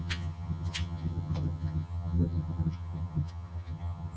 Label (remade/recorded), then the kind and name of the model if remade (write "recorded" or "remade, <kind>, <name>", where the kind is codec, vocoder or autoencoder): remade, vocoder, HiFi-GAN